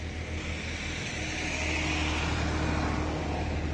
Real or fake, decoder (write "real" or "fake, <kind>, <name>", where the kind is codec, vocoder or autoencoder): real